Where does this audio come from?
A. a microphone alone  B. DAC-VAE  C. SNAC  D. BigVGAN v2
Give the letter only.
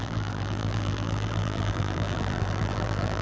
D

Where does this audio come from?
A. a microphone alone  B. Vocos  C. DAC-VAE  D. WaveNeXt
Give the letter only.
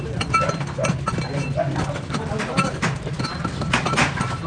A